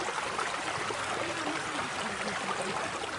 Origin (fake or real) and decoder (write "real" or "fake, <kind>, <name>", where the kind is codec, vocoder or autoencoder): real